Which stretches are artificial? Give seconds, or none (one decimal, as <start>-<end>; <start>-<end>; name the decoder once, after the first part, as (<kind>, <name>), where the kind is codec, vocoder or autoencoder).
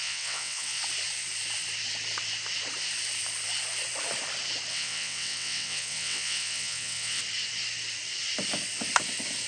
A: 0.0-0.8 (vocoder, WaveNeXt); 4.7-7.2